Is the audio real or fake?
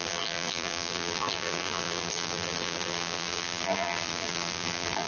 fake